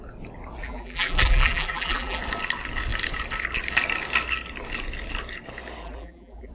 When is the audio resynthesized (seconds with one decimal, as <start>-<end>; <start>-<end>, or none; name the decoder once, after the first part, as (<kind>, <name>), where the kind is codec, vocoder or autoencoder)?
0.6-2.2 (vocoder, BigVGAN v2); 5.8-6.5